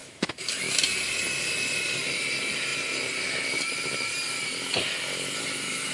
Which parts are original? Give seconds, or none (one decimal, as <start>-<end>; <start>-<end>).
0.6-5.9